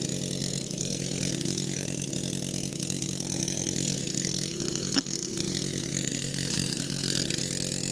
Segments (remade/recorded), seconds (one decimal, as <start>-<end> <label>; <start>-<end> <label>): 0.0-0.4 recorded; 0.4-2.1 remade; 2.1-2.7 recorded; 2.7-7.3 remade; 7.3-7.9 recorded